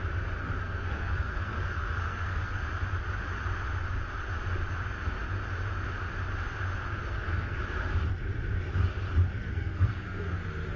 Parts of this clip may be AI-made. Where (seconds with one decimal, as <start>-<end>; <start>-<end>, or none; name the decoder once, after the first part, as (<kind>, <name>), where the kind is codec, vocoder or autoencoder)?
0.4-2.6 (codec, SNAC); 7.0-7.6; 9.4-10.4